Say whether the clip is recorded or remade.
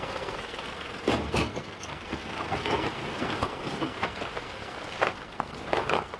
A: remade